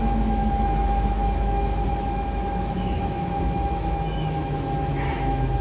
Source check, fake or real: fake